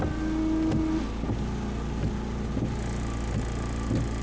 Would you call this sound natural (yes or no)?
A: yes